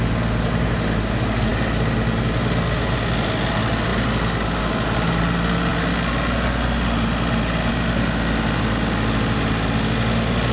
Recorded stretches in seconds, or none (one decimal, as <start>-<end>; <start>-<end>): 0.0-10.5